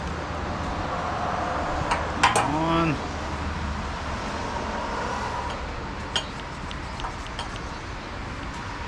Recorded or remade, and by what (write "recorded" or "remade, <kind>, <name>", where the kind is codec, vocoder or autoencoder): recorded